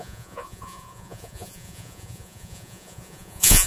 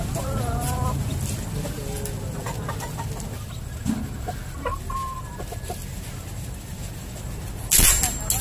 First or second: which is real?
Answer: second